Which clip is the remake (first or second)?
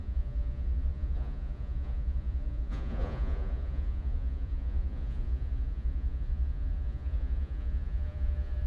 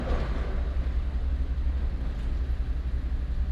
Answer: first